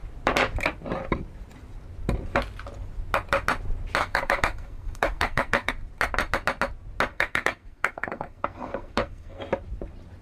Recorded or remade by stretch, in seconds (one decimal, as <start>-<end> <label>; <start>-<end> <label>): 0.0-4.0 recorded; 4.0-5.7 remade; 5.7-7.1 recorded; 7.1-9.4 remade; 9.4-10.2 recorded